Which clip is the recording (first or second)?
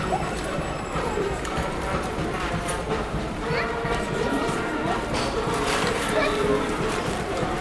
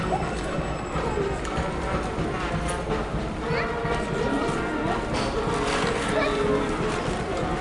second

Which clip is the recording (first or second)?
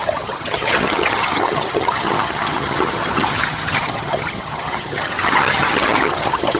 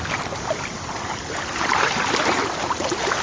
second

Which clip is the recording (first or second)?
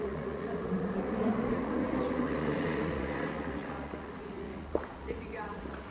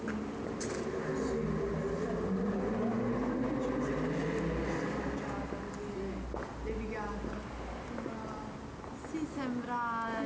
second